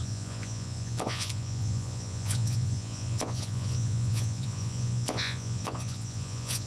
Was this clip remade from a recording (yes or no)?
yes